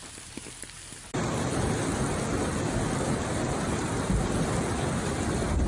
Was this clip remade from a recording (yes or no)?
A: no